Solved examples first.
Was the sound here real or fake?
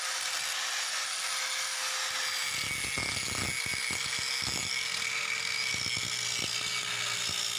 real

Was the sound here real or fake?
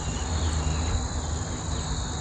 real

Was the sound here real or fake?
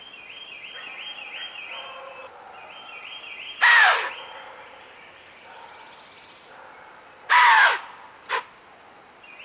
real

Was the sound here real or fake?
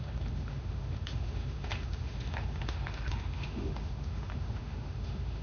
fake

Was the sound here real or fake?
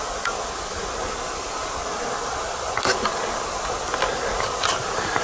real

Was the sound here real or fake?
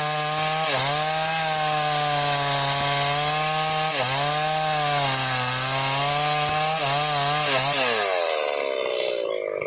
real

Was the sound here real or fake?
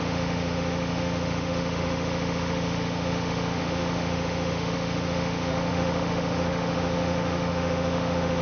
fake